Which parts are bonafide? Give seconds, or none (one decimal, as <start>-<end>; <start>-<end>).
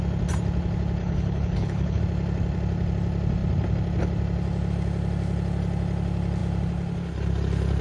0.0-1.0; 2.0-7.8